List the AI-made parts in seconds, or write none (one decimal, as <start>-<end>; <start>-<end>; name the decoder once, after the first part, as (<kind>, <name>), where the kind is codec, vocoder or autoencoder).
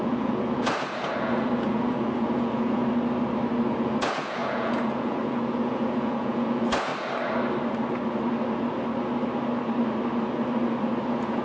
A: 0.0-2.8 (vocoder, Vocos); 3.7-6.9; 11.0-11.4